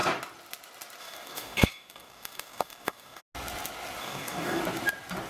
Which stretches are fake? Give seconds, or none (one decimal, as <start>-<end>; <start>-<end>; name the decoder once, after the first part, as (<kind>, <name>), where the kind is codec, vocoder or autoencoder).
1.0-3.2 (codec, DAC); 4.0-4.6